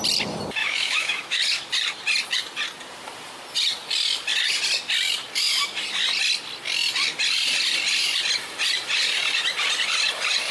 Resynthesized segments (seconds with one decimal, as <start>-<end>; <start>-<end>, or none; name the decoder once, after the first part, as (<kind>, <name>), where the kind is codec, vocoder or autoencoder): 0.6-1.4 (autoencoder, DAC-VAE)